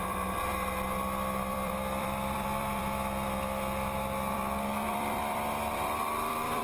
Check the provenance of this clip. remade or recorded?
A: remade